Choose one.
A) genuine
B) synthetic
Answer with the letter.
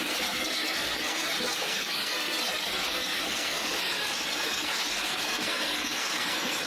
B